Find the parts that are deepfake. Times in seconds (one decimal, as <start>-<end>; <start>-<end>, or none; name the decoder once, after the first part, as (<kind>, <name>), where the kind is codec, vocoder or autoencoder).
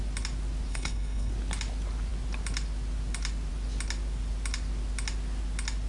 0.7-1.3 (codec, HILCodec)